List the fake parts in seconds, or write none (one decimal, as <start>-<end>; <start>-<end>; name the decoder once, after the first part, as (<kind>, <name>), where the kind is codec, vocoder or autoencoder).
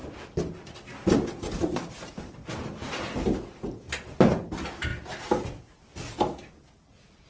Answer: 0.0-4.2 (vocoder, BigVGAN v2); 4.9-5.6